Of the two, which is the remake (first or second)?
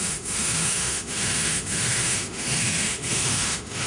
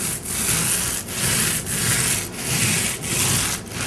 first